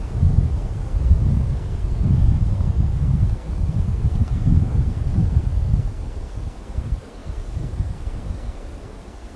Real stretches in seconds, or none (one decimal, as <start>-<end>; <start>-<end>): none